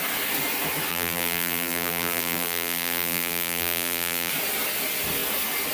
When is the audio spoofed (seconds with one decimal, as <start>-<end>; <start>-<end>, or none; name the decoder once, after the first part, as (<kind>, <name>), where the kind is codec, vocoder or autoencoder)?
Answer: 0.9-4.3 (vocoder, BigVGAN v2)